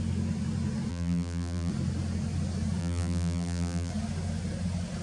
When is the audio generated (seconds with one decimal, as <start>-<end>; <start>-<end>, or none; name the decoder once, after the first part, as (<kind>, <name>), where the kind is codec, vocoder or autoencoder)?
0.9-1.7 (vocoder, BigVGAN v2); 2.8-3.9